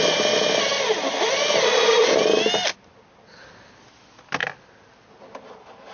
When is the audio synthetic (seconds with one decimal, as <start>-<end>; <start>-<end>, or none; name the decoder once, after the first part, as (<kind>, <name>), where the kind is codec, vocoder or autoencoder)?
none

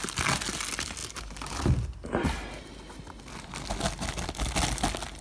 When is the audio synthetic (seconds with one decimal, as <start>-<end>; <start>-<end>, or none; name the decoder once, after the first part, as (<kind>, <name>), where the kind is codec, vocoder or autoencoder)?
none

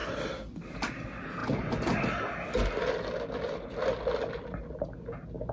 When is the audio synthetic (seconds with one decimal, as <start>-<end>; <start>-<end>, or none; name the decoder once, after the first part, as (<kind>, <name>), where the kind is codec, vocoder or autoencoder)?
none

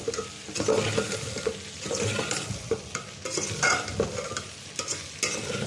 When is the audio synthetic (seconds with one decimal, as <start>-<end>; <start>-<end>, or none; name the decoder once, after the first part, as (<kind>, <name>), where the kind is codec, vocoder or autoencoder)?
none